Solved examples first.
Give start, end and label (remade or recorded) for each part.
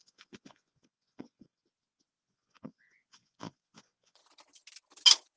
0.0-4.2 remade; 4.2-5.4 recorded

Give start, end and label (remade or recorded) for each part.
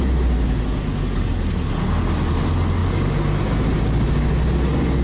0.0-5.0 recorded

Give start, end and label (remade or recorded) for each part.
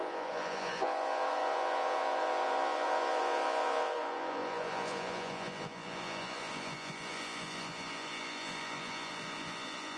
0.0-10.0 remade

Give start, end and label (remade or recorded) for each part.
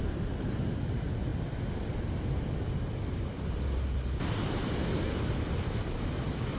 0.0-6.6 recorded